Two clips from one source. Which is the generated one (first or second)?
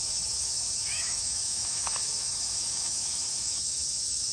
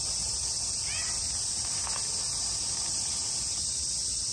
first